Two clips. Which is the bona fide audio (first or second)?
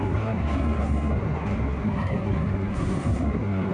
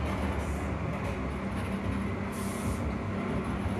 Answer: second